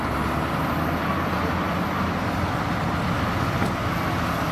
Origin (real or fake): real